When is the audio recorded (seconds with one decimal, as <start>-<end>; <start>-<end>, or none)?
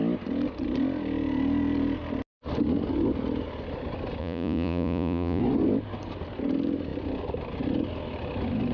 0.0-4.2; 5.4-8.7